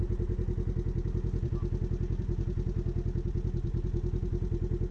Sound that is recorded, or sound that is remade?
recorded